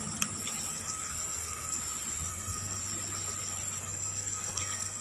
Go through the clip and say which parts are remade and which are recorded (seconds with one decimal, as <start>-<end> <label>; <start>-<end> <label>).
0.0-0.7 recorded; 0.7-1.8 remade; 1.8-2.3 recorded; 2.3-2.8 remade; 2.8-3.8 recorded; 3.8-5.0 remade